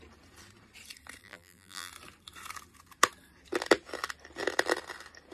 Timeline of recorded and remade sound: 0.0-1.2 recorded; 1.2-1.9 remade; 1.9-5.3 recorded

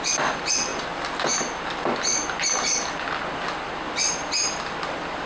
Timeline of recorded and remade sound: 0.0-0.7 remade; 0.7-3.9 recorded; 3.9-5.3 remade